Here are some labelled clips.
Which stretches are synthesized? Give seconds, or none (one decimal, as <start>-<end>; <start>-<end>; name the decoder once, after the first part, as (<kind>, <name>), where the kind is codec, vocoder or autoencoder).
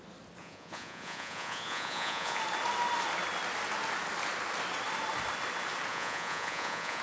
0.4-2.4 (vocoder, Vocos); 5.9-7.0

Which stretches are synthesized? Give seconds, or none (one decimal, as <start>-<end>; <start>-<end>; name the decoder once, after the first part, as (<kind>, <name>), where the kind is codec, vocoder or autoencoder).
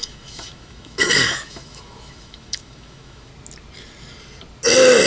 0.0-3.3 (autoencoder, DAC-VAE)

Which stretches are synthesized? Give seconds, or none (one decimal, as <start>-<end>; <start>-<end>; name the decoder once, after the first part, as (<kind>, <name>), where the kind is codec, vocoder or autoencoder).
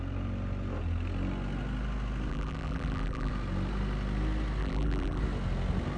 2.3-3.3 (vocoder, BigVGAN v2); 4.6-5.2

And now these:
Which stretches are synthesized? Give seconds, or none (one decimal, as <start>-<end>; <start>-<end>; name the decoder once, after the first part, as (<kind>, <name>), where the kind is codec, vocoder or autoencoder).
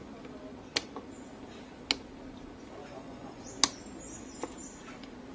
2.8-3.4 (vocoder, Vocos)